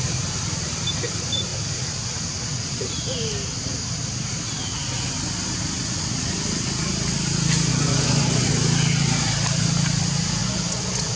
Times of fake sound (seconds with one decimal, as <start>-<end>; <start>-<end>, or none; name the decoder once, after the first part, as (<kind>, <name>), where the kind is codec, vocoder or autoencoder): 7.7-8.5 (vocoder, Vocos); 10.4-11.2